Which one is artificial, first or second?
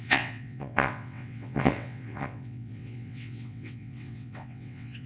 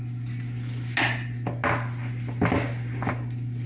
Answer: first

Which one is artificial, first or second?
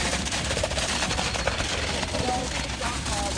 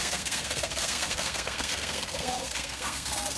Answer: second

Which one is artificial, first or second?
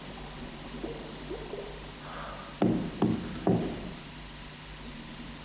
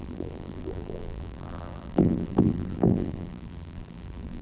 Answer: second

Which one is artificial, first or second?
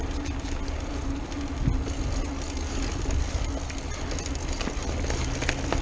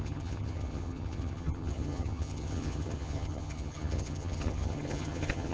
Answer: second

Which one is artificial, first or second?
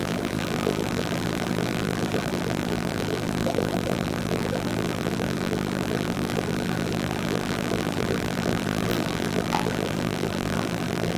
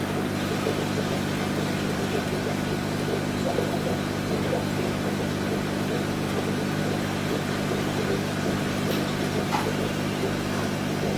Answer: first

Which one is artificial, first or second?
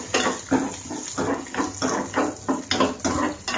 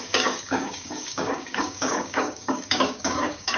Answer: second